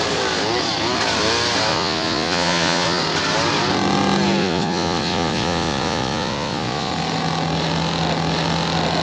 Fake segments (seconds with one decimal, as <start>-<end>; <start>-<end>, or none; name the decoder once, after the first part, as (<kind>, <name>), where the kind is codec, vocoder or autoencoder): 1.7-3.0 (vocoder, Vocos); 4.4-6.9